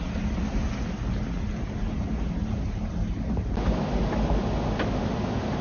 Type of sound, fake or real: real